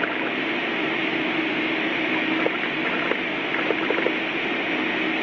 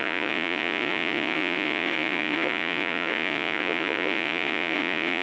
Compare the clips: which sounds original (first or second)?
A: first